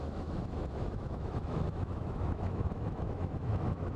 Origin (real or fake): fake